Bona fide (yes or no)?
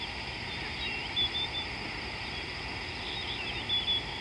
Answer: yes